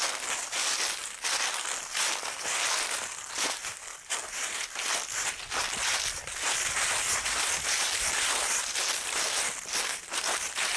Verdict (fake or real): real